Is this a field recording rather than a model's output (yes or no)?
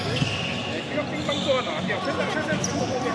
yes